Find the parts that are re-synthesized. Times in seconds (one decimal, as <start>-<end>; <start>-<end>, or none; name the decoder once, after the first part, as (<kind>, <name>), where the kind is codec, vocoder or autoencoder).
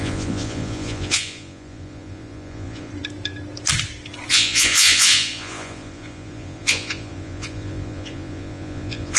0.0-2.9 (vocoder, Vocos); 4.3-9.2